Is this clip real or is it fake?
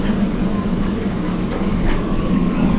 fake